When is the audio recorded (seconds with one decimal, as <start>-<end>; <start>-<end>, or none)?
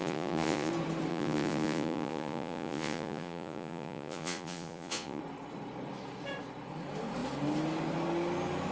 0.7-1.1; 5.2-8.7